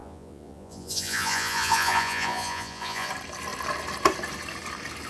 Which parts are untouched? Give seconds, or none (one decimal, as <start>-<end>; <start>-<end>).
3.1-5.1